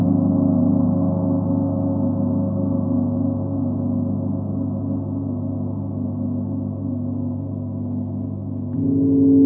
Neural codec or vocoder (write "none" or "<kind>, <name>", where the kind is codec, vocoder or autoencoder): none